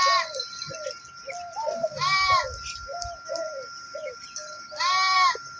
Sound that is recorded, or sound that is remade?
recorded